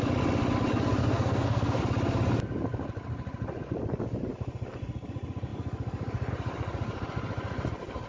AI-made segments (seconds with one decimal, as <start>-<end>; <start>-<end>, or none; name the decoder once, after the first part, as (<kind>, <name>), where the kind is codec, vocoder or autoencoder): 1.0-1.8 (codec, SNAC)

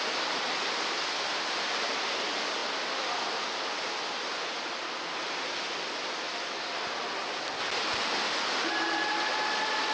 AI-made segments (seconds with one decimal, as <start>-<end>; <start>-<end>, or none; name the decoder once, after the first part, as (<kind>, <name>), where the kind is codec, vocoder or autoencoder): none

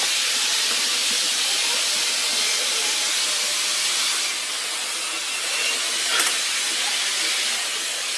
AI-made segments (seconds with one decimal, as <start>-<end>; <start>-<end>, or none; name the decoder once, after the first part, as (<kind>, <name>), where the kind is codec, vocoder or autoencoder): none

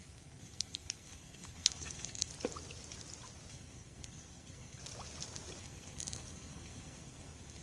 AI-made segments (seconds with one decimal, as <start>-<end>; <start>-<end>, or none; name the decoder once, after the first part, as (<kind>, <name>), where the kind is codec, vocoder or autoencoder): 0.0-2.3 (codec, SNAC); 3.5-4.8; 5.6-7.6

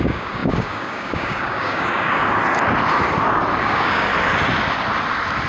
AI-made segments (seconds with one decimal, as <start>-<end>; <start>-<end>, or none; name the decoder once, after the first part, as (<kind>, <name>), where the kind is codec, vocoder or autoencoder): 0.0-2.2 (codec, DAC); 3.6-4.1

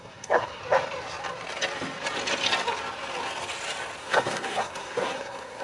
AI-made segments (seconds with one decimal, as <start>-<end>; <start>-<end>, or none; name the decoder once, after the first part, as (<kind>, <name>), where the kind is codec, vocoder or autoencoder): 0.0-0.6 (codec, SNAC); 4.0-5.6

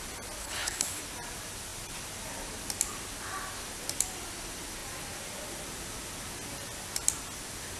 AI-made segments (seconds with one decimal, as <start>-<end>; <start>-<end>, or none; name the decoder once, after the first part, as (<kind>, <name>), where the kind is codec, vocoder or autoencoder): 0.4-1.0 (codec, HILCodec)